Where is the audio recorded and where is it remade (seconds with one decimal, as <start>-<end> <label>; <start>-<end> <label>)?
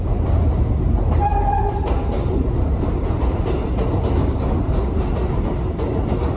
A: 0.0-6.4 recorded